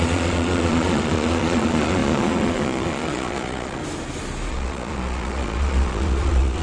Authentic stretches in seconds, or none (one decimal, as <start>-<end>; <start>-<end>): 3.8-4.5